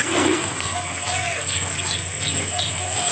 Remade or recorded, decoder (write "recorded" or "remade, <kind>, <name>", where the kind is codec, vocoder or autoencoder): remade, codec, SNAC